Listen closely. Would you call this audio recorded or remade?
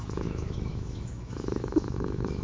remade